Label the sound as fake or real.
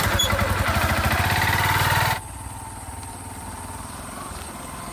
real